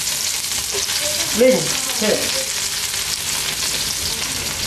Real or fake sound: real